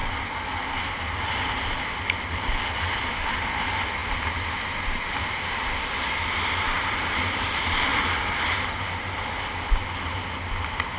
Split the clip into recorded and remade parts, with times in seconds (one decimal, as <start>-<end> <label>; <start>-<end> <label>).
0.0-11.0 recorded